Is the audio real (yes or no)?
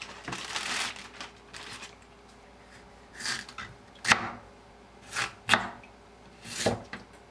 yes